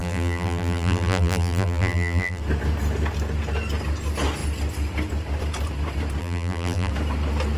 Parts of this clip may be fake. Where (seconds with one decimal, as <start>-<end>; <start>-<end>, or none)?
0.0-2.4; 6.2-6.9